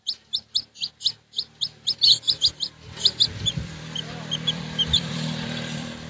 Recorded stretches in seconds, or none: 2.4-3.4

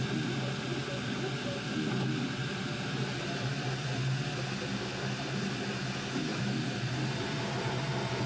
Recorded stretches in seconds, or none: 0.0-6.3; 6.8-8.3

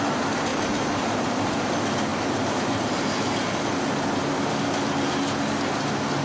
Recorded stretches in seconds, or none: 0.0-0.5; 1.7-2.1; 3.9-6.2

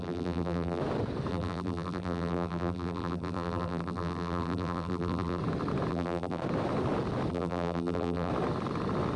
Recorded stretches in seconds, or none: 0.8-1.3; 5.4-5.9; 6.4-7.3; 8.3-9.2

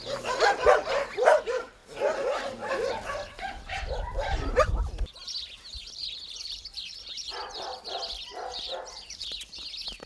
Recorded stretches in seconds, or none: 1.8-2.7